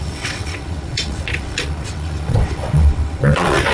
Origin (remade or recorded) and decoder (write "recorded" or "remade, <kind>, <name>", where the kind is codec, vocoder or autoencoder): remade, vocoder, WaveNeXt